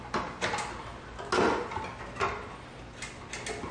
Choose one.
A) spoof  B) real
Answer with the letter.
B